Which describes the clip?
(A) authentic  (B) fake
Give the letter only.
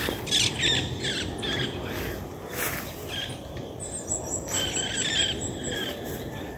A